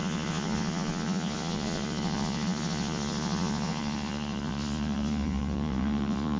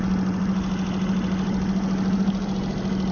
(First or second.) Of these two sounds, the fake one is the first